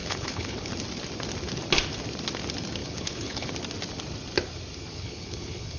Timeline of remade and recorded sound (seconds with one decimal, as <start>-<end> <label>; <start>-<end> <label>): 0.0-0.7 remade; 0.7-2.8 recorded; 2.8-3.5 remade; 3.5-4.9 recorded; 4.9-5.8 remade